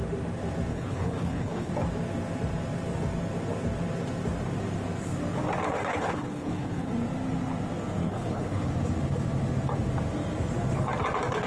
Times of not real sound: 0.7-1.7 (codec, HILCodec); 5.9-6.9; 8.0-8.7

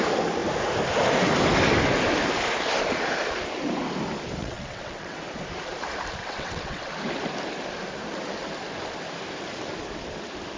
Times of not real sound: 4.4-5.2 (vocoder, WaveNeXt); 6.2-6.9

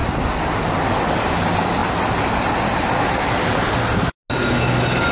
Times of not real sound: none